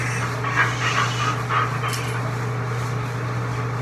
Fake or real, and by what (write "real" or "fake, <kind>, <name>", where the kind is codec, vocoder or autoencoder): real